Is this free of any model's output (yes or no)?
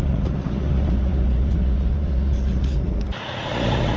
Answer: no